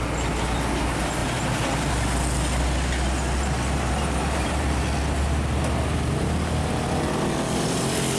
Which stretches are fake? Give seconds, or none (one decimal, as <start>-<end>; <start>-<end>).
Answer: none